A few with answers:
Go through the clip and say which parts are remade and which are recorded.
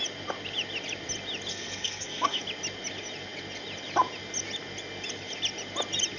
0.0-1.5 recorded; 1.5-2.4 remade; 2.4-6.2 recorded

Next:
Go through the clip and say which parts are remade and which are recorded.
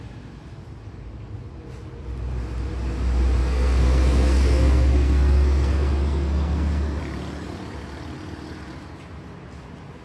0.0-3.4 recorded; 3.4-7.0 remade; 7.0-10.0 recorded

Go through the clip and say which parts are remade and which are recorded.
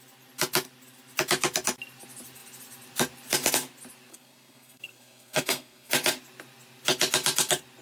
0.0-4.1 recorded; 4.1-5.9 remade; 5.9-7.8 recorded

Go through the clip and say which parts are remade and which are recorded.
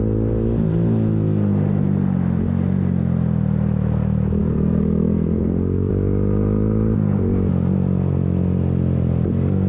0.0-4.4 recorded; 4.4-5.9 remade; 5.9-9.7 recorded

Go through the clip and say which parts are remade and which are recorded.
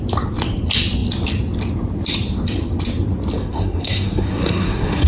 0.0-3.4 recorded; 3.4-5.1 remade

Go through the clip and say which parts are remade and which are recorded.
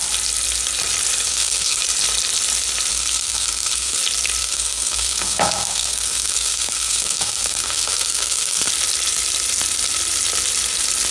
0.0-1.3 recorded; 1.3-1.8 remade; 1.8-2.9 recorded; 2.9-4.0 remade; 4.0-4.4 recorded; 4.4-8.7 remade; 8.7-11.1 recorded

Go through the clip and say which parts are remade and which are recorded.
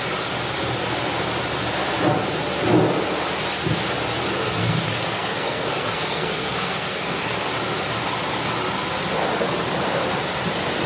0.0-4.6 recorded; 4.6-7.5 remade; 7.5-10.9 recorded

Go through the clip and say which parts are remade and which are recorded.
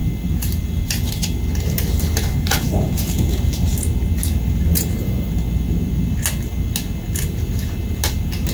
0.0-8.5 recorded